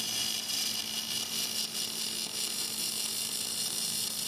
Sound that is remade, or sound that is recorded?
recorded